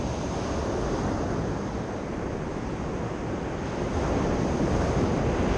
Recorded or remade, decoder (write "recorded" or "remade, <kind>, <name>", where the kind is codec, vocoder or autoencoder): recorded